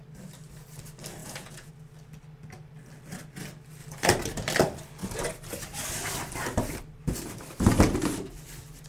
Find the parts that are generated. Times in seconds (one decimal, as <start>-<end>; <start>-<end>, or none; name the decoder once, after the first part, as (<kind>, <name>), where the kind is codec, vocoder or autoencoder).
1.2-1.7 (vocoder, Vocos)